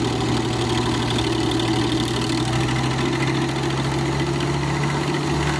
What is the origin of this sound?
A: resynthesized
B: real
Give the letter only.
B